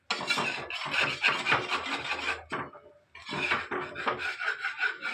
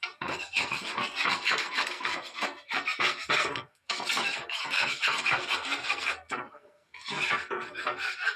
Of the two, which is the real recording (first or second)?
first